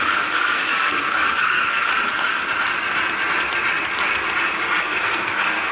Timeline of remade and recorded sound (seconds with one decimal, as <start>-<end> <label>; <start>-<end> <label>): 0.0-1.9 remade; 1.9-4.8 recorded; 4.8-5.7 remade